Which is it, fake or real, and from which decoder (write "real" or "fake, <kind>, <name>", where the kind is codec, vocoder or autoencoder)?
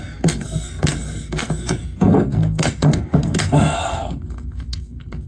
fake, codec, SNAC